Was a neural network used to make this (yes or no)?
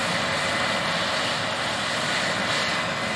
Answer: no